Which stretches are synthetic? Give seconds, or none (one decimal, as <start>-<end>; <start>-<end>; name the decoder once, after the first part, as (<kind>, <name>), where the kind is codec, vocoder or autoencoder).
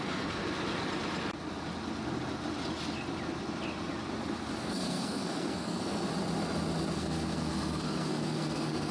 0.0-0.4 (codec, SNAC); 4.6-6.1; 6.9-8.9